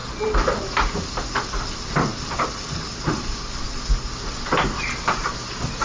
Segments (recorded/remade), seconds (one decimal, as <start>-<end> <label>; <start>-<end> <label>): 0.0-5.8 recorded